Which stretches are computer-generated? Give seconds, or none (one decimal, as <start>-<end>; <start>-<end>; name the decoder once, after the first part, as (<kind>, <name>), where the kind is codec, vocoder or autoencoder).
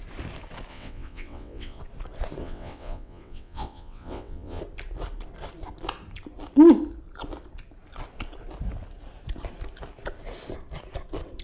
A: 0.7-1.8 (vocoder, WaveNeXt); 2.4-4.6